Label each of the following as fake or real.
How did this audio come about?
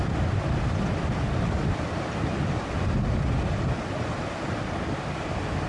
real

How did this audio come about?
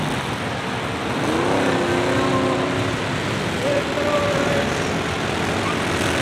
real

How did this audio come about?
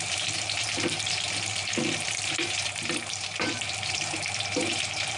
fake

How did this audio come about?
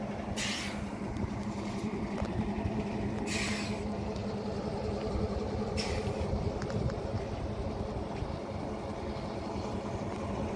real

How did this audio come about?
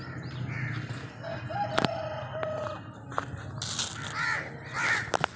real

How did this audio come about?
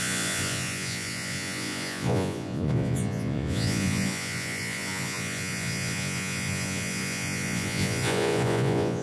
fake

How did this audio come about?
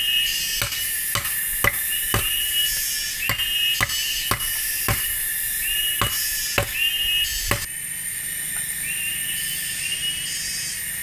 real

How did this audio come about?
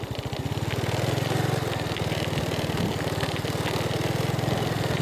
real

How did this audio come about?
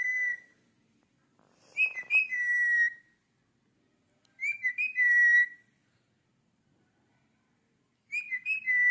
real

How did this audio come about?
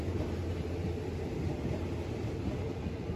real